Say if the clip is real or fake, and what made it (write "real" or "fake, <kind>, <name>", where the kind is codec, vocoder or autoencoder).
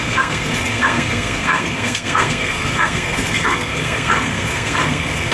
fake, codec, SNAC